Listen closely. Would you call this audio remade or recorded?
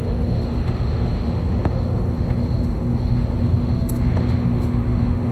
remade